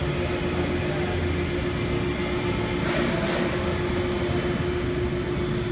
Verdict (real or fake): real